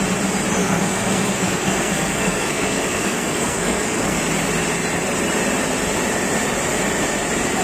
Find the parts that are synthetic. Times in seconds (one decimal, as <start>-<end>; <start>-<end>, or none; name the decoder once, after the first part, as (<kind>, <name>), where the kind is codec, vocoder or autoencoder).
0.6-4.2 (codec, SNAC)